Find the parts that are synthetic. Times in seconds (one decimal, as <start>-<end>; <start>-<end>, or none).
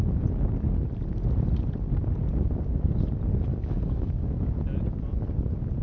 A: 3.5-4.5